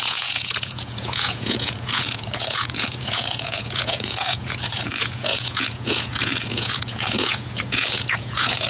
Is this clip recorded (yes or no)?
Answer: no